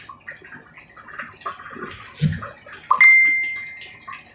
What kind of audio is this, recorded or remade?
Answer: recorded